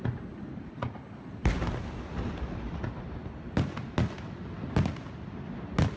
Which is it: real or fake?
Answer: real